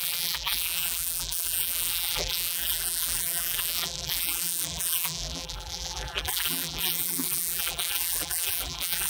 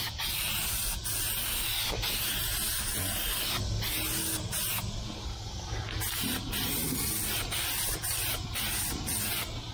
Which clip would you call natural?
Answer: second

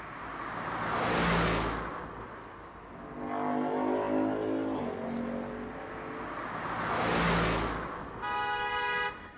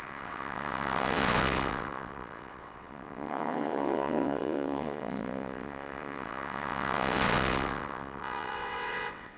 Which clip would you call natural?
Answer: first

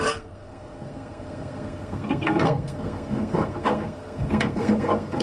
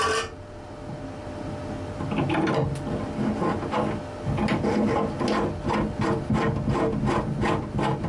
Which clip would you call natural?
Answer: second